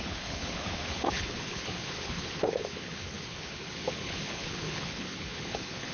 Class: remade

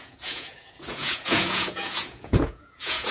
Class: remade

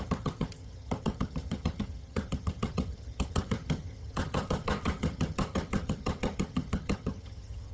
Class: remade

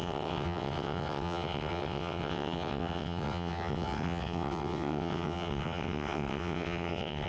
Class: remade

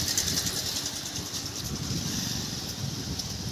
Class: recorded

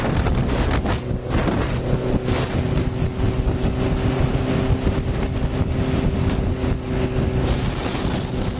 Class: recorded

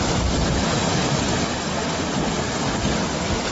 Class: recorded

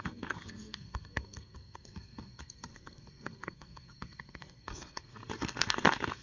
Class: remade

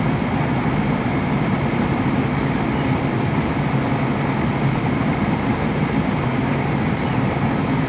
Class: recorded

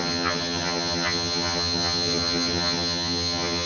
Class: remade